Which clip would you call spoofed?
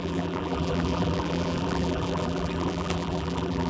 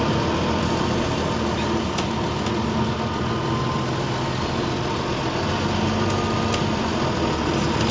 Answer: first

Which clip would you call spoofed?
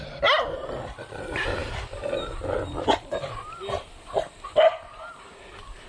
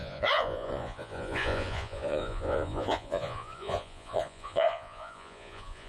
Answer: second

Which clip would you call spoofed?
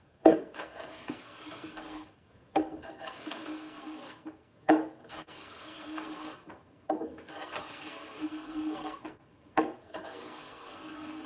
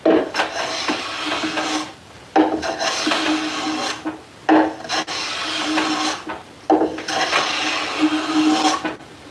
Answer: first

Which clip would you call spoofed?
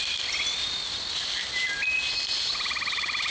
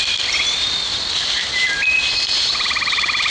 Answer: second